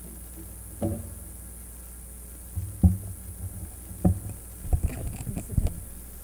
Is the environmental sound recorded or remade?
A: recorded